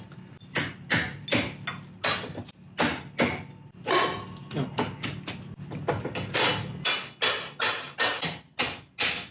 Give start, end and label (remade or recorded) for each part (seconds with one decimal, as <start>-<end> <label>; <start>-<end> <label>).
0.0-9.3 recorded